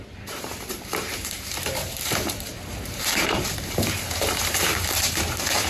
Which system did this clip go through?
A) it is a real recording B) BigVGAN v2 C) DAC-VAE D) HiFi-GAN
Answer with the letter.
B